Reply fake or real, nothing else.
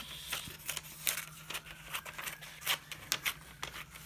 real